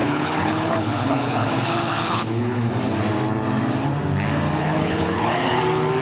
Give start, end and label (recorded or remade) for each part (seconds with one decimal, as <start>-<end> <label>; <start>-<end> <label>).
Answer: 0.0-2.7 remade; 2.7-4.6 recorded; 4.6-5.6 remade; 5.6-6.0 recorded